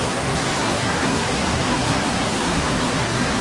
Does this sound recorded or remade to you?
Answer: remade